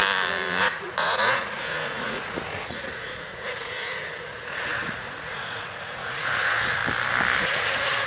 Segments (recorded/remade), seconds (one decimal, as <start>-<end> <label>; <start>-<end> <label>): 0.0-0.6 recorded; 0.6-6.8 remade; 6.8-7.4 recorded; 7.4-8.1 remade